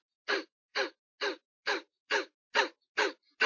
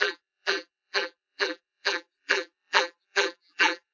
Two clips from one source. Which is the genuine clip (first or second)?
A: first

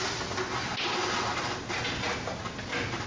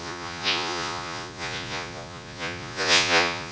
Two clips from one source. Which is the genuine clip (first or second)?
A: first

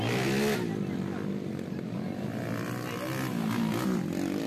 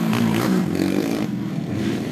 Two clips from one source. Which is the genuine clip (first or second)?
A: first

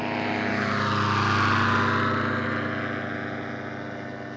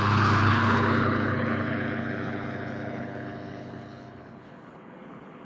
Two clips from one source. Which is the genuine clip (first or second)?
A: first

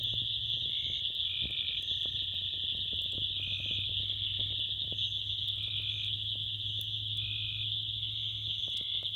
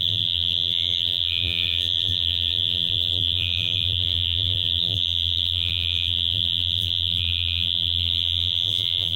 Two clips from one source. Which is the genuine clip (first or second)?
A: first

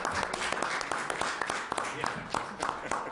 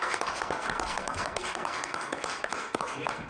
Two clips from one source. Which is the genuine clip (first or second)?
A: first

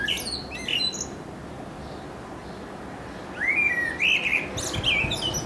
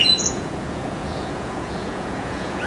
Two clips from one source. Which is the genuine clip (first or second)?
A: first